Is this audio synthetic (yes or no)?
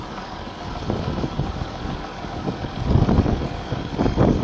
yes